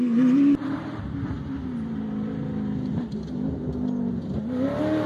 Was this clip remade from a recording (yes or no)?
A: no